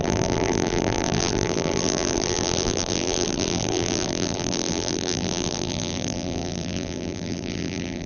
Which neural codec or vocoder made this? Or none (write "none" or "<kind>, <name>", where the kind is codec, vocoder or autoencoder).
vocoder, BigVGAN v2